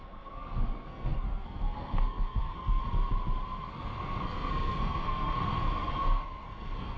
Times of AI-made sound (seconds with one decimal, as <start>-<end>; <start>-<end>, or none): 0.0-2.8; 3.7-7.0